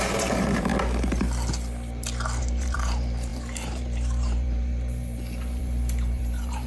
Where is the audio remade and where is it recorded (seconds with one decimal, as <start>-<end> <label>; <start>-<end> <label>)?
0.0-0.7 remade; 0.7-2.4 recorded; 2.4-6.7 remade